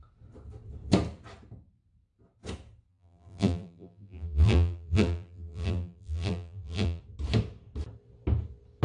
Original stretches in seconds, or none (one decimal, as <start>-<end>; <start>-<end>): 0.0-2.9; 7.0-8.8